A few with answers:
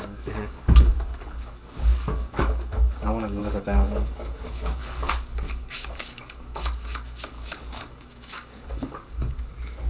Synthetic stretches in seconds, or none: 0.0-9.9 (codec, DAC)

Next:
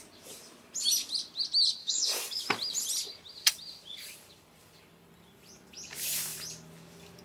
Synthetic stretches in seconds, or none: 1.8-2.4 (codec, DAC)

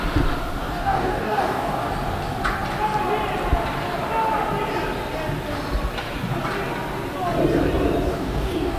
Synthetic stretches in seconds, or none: 0.6-1.9 (codec, DAC); 8.1-8.8

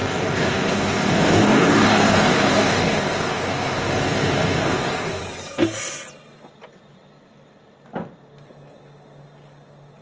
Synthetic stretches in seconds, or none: 0.0-5.2 (codec, DAC)

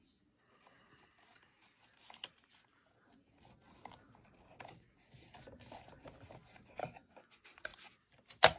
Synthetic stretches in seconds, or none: 6.8-7.3 (codec, DAC)

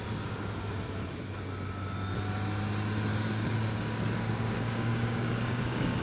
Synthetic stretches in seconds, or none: 3.1-6.0 (codec, DAC)

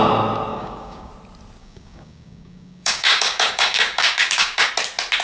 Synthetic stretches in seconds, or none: 0.5-1.1 (codec, DAC); 1.6-4.7